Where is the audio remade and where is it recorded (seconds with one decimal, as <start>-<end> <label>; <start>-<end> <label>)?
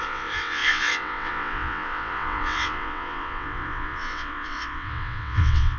0.0-5.8 remade